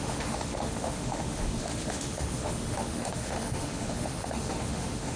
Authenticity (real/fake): fake